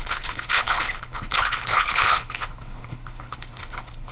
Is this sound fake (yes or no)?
yes